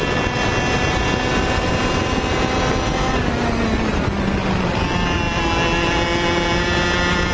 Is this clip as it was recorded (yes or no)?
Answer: yes